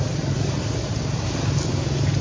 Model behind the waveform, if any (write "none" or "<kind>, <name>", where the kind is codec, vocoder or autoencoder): none